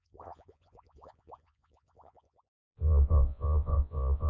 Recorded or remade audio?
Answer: remade